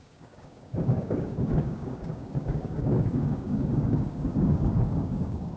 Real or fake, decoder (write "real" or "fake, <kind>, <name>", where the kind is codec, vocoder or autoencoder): fake, codec, DAC